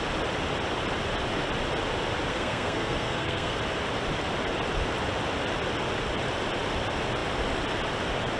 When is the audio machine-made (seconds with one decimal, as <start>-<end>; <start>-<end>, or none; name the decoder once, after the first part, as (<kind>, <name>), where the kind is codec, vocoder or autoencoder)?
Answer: 2.3-3.6 (codec, SNAC)

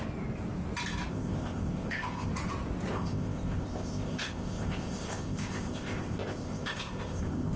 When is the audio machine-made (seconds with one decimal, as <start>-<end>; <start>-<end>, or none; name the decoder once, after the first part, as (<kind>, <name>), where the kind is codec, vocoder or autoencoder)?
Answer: 1.1-2.3 (codec, ZipCodec); 2.9-7.6